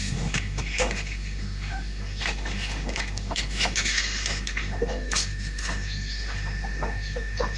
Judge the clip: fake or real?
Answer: fake